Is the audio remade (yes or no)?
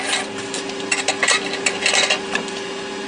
no